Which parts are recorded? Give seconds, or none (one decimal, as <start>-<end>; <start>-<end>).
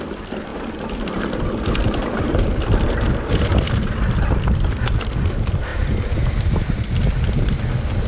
0.0-0.5; 5.0-5.7